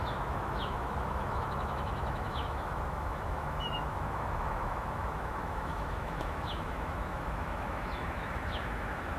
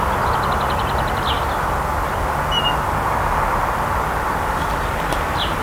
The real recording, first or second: second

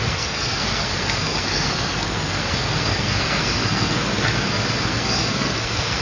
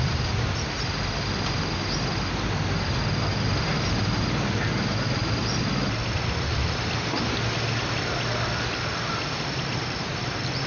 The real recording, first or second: second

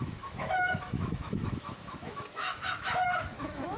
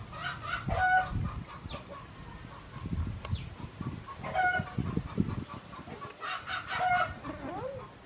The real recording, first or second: second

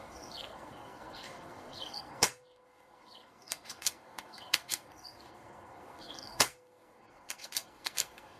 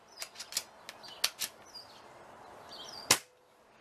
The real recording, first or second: second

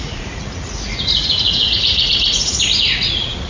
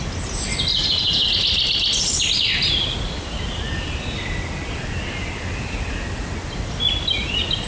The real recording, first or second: second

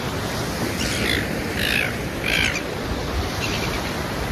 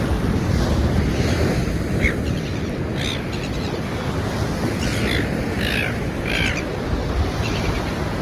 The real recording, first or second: second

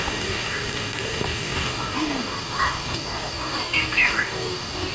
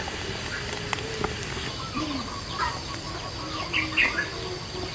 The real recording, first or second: second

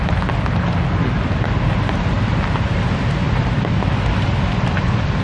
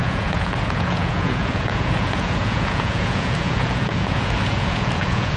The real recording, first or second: first